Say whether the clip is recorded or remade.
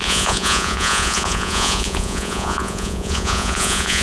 remade